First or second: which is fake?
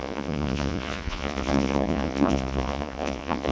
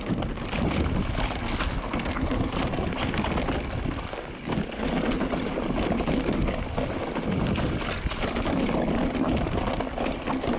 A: first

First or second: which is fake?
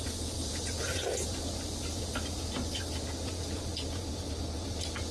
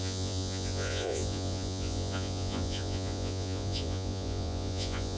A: second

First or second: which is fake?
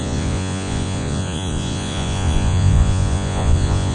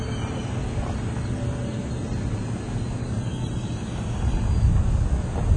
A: first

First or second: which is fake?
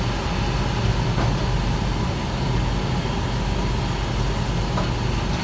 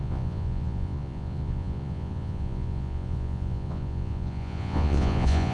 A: second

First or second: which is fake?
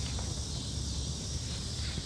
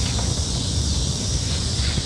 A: second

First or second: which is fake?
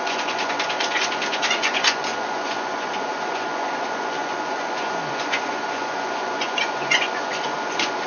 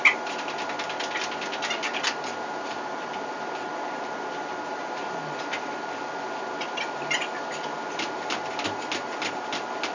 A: first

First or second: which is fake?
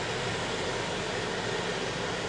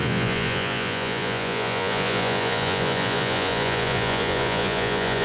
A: second